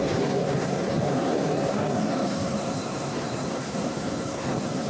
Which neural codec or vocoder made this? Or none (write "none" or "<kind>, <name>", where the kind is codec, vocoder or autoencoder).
codec, SNAC